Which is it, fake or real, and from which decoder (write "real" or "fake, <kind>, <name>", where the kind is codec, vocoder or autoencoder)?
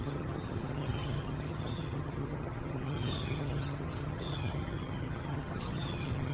fake, vocoder, HiFi-GAN